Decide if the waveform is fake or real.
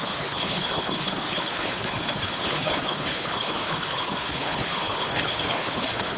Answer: fake